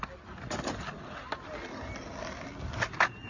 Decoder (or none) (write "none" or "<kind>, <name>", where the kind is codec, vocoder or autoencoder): none